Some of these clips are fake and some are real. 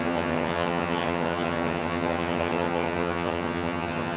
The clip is fake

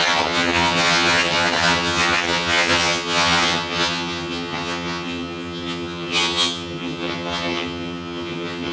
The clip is fake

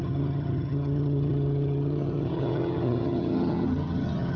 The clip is fake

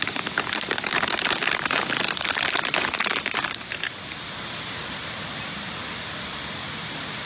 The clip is real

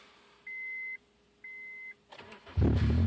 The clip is real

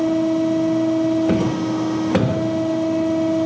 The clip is real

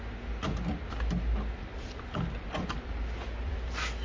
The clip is real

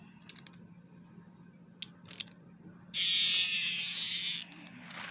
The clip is real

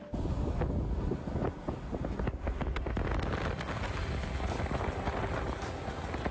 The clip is real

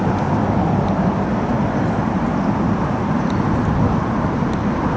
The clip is real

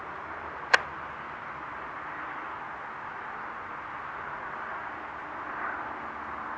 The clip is real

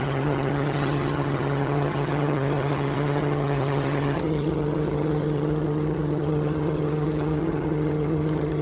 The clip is fake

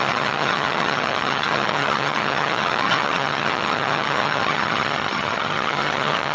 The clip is fake